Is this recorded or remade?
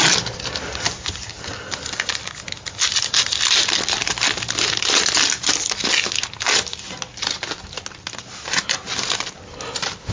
recorded